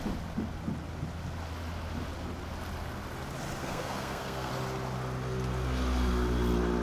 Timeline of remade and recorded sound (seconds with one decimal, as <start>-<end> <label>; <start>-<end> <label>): 0.0-3.6 recorded; 3.6-4.5 remade; 4.5-6.8 recorded